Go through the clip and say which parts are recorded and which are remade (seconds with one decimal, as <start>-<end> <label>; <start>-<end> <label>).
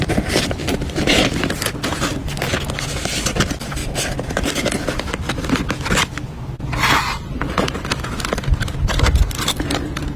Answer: 0.0-0.6 recorded; 0.6-1.3 remade; 1.3-3.8 recorded; 3.8-4.4 remade; 4.4-10.2 recorded